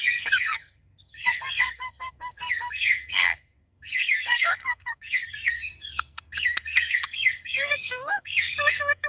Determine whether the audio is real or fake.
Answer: fake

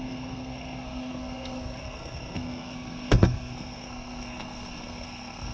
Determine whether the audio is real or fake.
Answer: fake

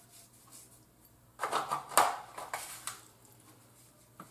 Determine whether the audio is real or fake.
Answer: real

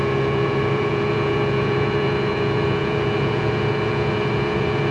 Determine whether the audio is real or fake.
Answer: fake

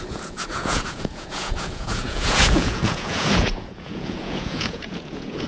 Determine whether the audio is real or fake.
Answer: fake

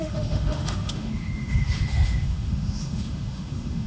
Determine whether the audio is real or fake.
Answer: fake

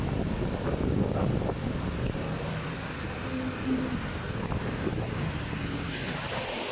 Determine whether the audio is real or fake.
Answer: real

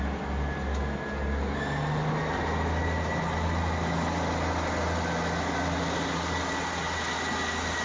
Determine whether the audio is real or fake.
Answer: real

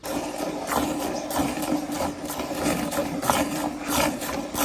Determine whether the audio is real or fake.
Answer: real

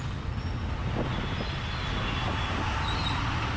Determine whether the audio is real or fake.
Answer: real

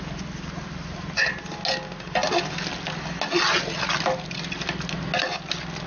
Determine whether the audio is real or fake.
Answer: real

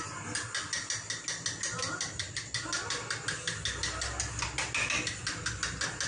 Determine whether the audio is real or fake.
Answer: real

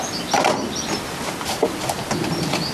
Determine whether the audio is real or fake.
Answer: real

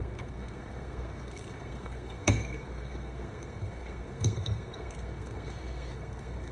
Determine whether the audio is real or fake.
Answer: fake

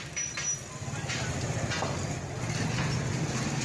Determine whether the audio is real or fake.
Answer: real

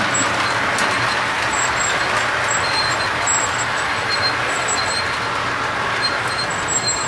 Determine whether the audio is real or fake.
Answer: real